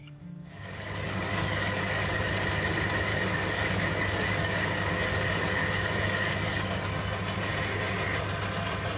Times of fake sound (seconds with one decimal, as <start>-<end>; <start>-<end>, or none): 0.0-2.3; 3.1-6.7